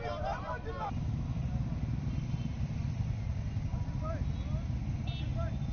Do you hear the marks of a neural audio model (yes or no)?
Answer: no